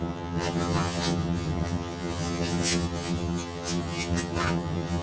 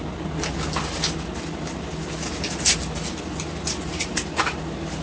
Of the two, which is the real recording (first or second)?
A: second